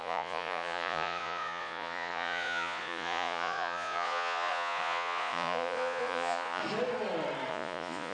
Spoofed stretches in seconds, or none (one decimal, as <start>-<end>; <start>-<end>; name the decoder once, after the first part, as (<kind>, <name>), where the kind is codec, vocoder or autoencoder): 0.0-6.6 (vocoder, Vocos); 7.5-8.1